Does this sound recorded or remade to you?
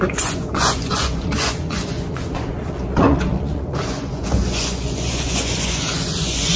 remade